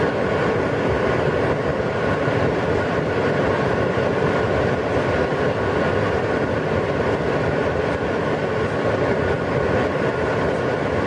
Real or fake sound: real